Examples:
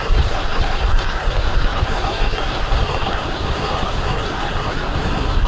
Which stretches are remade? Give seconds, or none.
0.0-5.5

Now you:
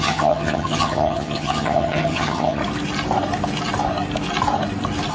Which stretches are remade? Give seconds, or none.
0.0-2.6